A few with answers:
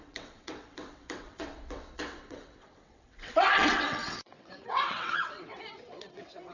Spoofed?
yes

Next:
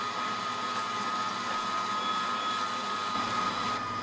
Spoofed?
no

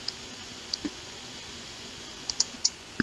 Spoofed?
yes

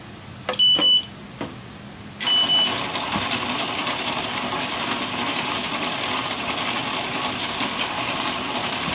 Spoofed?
no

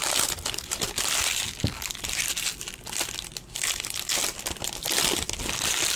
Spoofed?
no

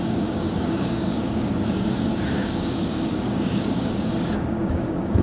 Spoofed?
yes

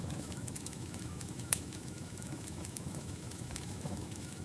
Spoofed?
yes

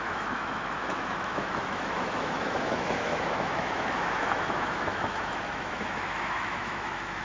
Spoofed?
yes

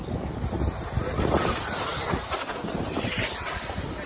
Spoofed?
no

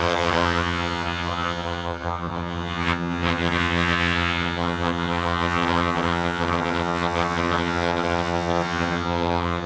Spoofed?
yes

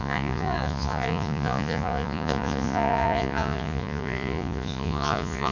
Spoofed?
yes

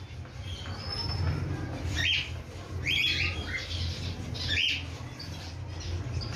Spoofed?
no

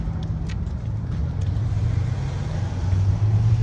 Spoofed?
no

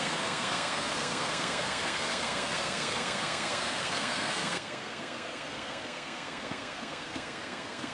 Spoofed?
yes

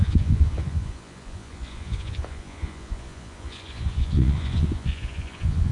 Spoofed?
yes